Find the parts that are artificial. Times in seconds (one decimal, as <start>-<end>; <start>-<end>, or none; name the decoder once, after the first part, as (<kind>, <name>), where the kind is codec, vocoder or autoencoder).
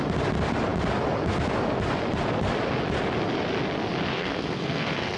4.1-5.2 (codec, SNAC)